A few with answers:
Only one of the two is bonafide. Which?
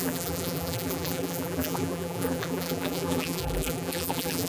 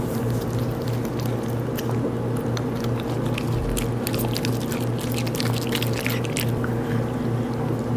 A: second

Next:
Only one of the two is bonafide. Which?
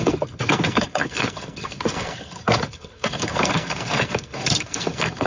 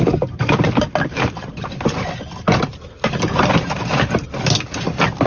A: second